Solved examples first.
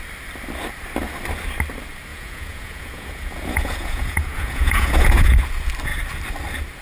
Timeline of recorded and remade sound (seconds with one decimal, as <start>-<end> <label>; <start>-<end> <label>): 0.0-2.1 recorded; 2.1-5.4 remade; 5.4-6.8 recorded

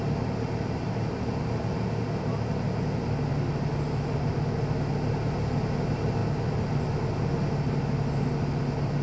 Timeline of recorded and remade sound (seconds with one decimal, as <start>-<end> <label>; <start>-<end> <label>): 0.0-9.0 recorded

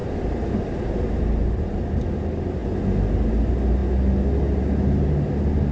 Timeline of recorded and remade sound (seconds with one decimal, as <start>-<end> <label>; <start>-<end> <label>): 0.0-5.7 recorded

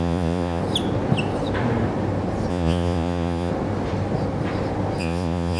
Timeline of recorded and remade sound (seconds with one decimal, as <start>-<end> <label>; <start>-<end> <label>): 0.0-0.6 remade; 0.6-2.5 recorded; 2.5-3.5 remade; 3.5-5.0 recorded; 5.0-5.6 remade

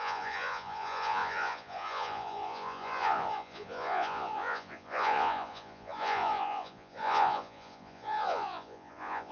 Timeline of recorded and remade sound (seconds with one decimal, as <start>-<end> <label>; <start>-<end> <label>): 0.0-9.3 remade

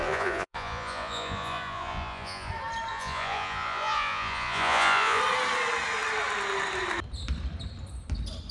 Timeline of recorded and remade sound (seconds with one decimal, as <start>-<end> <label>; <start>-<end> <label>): 0.0-2.5 remade; 2.5-2.9 recorded; 2.9-5.2 remade; 5.2-8.5 recorded